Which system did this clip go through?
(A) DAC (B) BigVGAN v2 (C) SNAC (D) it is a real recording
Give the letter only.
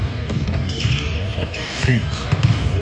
A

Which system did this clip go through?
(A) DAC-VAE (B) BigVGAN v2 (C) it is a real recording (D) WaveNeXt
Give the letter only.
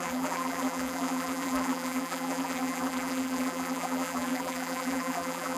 B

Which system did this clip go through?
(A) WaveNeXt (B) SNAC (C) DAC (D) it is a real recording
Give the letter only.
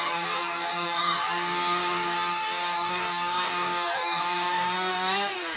C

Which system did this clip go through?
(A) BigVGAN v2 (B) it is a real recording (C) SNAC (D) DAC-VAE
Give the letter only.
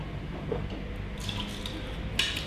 B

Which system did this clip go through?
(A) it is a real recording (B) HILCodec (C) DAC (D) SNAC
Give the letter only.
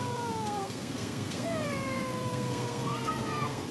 D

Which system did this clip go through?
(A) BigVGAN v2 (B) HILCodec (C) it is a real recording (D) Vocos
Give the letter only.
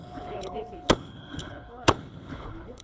B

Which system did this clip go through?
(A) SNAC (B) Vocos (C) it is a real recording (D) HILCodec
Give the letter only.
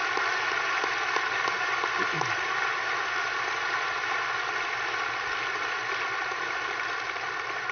C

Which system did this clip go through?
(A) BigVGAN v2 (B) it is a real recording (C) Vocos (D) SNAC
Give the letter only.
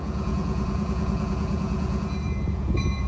C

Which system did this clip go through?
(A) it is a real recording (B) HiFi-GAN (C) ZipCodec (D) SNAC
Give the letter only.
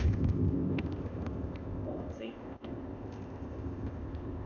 C